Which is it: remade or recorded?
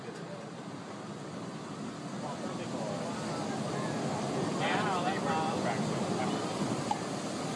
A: recorded